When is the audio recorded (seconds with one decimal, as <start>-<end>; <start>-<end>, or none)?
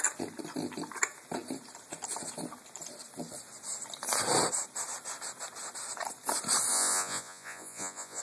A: 0.0-6.7